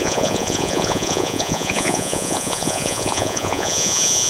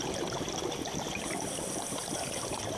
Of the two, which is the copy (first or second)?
first